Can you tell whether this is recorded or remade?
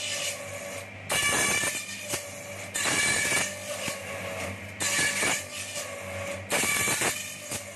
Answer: recorded